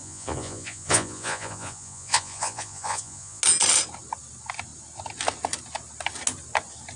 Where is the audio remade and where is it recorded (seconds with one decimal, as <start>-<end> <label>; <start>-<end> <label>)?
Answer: 0.0-3.4 remade; 3.4-7.0 recorded